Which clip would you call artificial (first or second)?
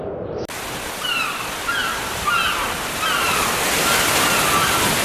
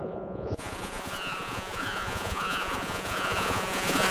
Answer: second